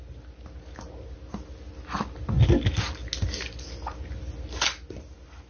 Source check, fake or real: real